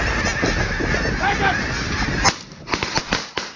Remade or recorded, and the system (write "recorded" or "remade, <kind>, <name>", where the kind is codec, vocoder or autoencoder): recorded